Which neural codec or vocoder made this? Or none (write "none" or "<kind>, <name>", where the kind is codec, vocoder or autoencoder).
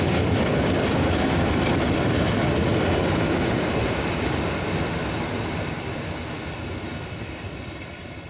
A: none